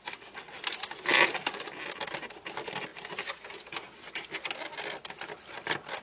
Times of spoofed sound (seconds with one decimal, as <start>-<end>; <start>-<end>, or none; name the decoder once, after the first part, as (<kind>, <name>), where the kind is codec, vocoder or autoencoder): none